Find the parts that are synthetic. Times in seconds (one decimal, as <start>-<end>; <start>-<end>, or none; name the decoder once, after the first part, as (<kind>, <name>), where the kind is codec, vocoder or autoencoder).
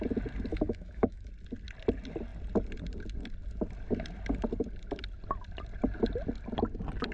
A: 0.5-1.3 (autoencoder, DAC-VAE)